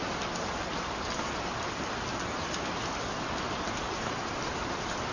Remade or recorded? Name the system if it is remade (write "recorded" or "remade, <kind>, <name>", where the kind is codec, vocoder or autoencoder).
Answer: recorded